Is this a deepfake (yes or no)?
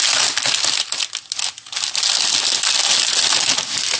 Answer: no